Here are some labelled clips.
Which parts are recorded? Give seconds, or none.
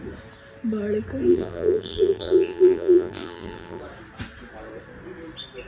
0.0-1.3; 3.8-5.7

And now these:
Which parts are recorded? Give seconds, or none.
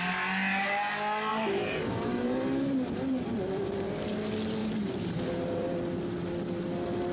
0.0-1.3; 3.9-4.6; 5.8-7.1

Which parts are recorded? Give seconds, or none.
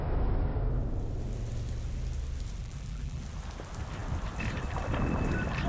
0.0-2.6; 3.2-5.7